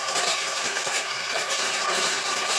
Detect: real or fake fake